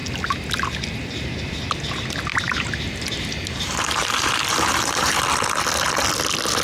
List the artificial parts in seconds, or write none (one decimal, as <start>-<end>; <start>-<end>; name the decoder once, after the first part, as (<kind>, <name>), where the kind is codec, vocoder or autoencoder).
2.3-5.2 (vocoder, BigVGAN v2)